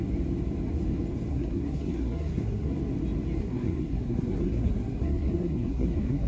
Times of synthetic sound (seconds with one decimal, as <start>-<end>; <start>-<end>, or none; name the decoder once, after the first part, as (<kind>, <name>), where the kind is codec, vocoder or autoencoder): 1.3-2.8 (codec, SNAC); 3.4-6.3